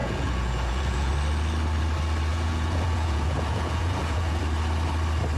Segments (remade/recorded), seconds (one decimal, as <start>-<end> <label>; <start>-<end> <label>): 0.0-1.1 remade; 1.1-2.3 recorded; 2.3-4.4 remade; 4.4-5.4 recorded